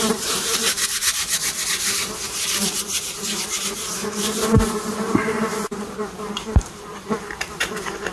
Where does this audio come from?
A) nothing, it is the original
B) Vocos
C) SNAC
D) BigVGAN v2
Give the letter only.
D